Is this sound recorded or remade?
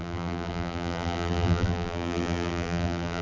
remade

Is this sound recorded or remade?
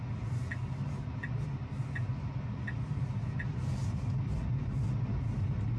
recorded